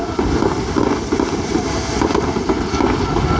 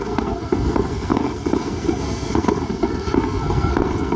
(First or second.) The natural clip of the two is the first